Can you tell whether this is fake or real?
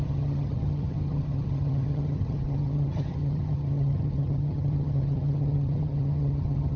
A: fake